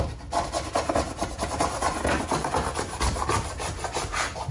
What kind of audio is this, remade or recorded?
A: recorded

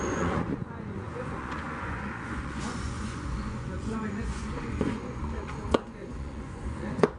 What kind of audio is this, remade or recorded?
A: remade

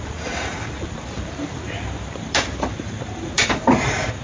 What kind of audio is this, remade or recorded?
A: remade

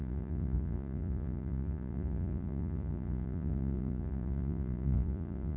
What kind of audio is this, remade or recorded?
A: remade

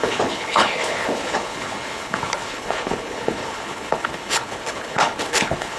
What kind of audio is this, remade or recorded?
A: remade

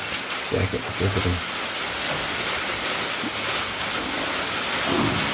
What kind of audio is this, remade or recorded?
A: recorded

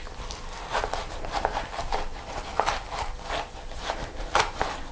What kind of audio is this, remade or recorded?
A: recorded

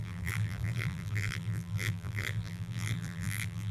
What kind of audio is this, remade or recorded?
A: remade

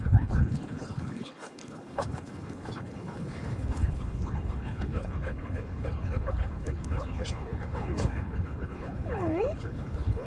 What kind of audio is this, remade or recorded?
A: remade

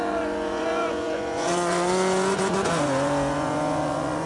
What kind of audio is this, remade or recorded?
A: remade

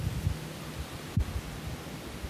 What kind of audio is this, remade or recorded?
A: recorded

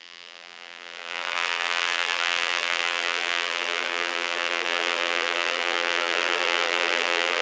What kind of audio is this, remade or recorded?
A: remade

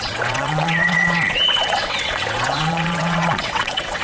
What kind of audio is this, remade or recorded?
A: remade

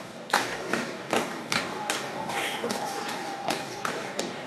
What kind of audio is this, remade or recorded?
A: remade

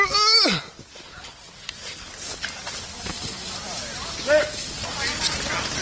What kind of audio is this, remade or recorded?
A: recorded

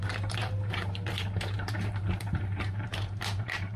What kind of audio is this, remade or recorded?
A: remade